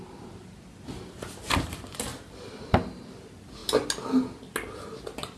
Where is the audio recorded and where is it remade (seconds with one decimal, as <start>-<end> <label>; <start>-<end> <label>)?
0.0-5.4 recorded